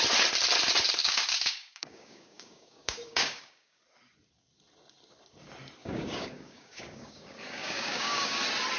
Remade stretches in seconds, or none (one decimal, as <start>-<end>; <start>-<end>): 1.0-3.8; 5.8-8.4